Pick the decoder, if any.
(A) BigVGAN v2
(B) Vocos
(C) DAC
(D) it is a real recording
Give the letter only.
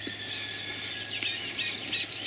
D